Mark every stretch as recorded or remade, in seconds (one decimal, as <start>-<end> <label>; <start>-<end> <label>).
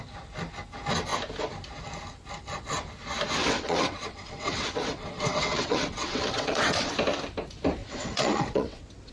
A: 0.0-3.4 recorded; 3.4-6.9 remade; 6.9-7.8 recorded; 7.8-9.1 remade